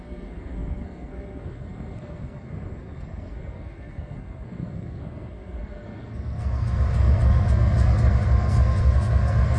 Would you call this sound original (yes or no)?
no